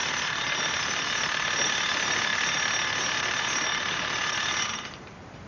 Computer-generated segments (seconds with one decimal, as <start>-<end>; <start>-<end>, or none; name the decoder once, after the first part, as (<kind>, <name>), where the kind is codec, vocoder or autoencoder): 0.0-2.3 (vocoder, BigVGAN v2); 3.2-5.5